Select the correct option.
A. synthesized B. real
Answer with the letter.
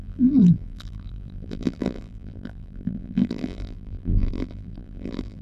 A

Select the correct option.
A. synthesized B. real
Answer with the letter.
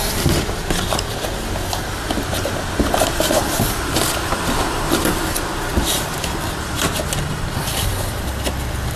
A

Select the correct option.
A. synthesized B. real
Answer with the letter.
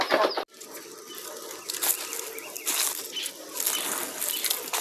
B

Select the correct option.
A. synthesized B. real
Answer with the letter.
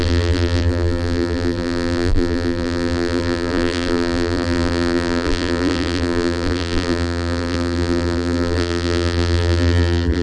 A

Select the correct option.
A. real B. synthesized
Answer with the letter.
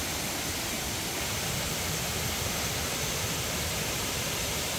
B